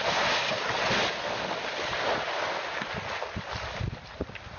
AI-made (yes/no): no